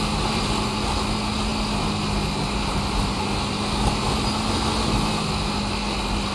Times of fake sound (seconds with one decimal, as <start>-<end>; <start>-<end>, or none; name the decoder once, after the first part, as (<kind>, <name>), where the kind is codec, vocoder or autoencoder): none